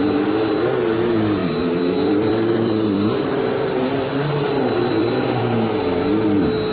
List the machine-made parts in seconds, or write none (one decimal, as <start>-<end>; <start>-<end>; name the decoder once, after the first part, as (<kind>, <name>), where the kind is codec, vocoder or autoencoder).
1.4-5.4 (vocoder, BigVGAN v2)